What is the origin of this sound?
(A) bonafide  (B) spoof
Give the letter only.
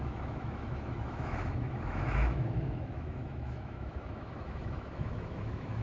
B